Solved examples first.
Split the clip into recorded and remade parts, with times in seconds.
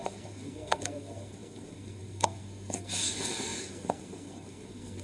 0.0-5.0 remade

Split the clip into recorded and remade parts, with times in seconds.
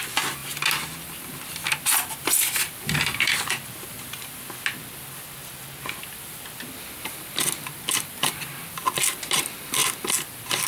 0.0-10.7 recorded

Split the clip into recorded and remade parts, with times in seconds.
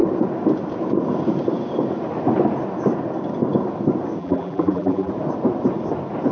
0.0-4.2 recorded; 4.2-5.1 remade; 5.1-6.3 recorded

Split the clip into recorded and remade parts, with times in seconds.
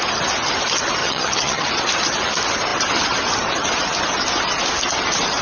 0.0-1.0 recorded; 1.0-1.7 remade; 1.7-5.4 recorded